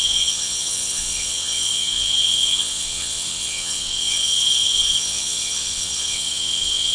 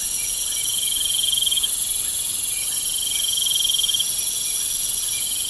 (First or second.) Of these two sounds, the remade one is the first